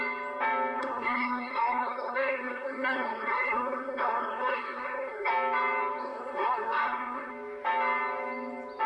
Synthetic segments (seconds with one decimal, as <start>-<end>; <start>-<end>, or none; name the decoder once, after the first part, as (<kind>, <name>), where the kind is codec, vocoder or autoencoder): 0.8-5.3 (codec, SNAC); 6.0-7.3